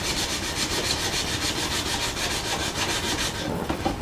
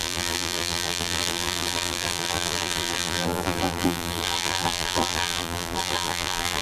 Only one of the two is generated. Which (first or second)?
second